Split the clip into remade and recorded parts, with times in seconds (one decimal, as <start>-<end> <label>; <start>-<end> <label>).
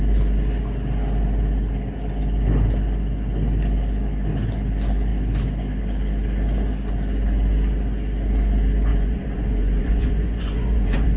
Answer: 0.0-8.9 recorded; 8.9-11.2 remade